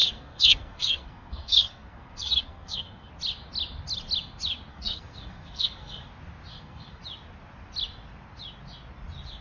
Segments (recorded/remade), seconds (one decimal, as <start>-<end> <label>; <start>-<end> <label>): 0.0-3.1 remade; 3.1-4.7 recorded; 4.7-6.1 remade; 6.1-6.5 recorded; 6.5-7.0 remade; 7.0-9.4 recorded